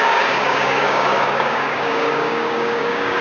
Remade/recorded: remade